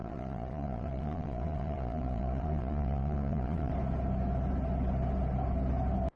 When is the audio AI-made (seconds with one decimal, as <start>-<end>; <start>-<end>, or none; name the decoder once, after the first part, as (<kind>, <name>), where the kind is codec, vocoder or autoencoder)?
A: 0.0-3.7 (vocoder, Vocos)